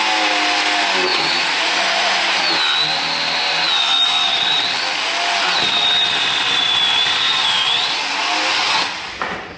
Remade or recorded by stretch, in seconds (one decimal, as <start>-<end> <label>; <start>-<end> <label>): 0.0-1.1 recorded; 1.1-2.4 remade; 2.4-9.6 recorded